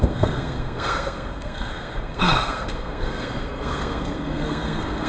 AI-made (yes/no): yes